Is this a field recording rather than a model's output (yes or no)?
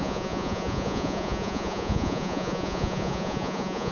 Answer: no